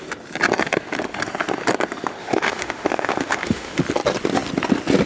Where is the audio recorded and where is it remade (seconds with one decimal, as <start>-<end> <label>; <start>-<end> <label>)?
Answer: 0.0-2.2 recorded; 2.2-3.8 remade; 3.8-5.1 recorded